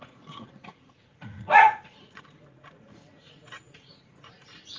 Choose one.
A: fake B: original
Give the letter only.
A